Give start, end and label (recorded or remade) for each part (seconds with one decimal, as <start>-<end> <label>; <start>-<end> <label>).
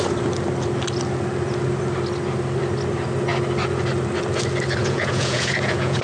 0.0-4.8 recorded; 4.8-6.0 remade